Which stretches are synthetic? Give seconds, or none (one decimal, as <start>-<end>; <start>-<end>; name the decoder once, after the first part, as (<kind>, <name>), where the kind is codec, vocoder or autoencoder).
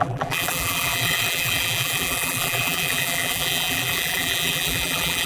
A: 0.0-5.3 (vocoder, BigVGAN v2)